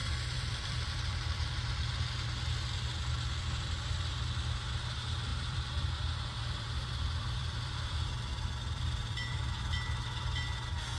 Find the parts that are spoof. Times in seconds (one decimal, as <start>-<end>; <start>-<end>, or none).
0.0-1.7; 5.3-9.6